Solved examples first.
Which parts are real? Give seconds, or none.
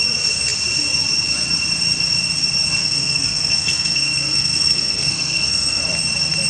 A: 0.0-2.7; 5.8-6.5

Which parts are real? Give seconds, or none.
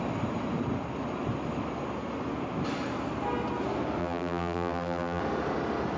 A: 0.0-4.0; 5.2-6.0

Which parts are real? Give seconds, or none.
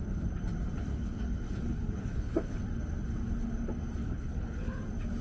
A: 0.0-0.9; 2.6-4.0; 4.8-5.2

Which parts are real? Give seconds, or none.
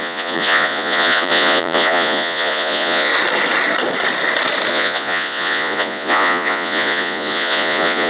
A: 3.1-4.7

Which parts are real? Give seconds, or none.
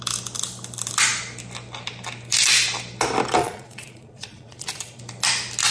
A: 0.0-3.4; 5.0-5.7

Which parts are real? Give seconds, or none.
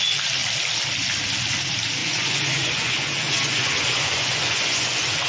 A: 0.0-2.0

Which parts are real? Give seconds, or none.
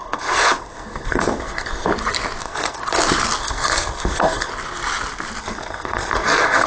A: 1.9-2.4; 2.8-3.4; 4.5-5.4